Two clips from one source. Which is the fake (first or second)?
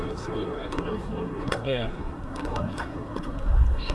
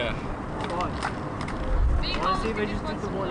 first